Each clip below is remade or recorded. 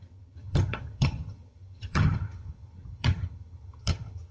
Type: remade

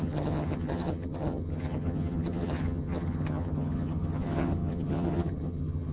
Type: remade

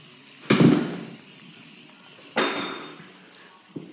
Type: recorded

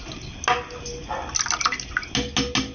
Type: recorded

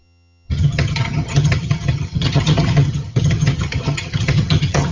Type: remade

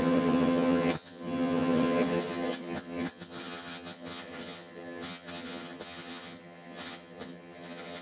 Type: remade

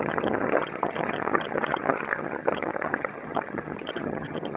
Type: remade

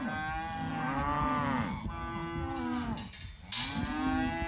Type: recorded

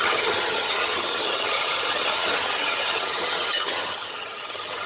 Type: remade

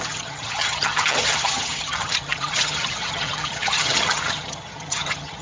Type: remade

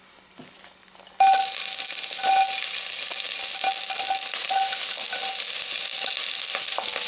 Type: recorded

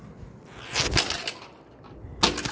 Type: recorded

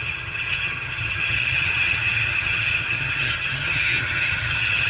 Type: remade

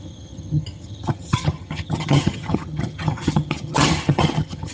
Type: remade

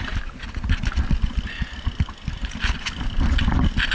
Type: recorded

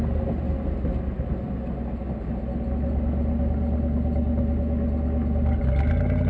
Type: recorded